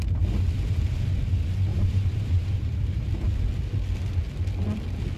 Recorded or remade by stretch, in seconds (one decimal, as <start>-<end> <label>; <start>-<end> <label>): 0.0-1.7 recorded; 1.7-3.3 remade; 3.3-5.2 recorded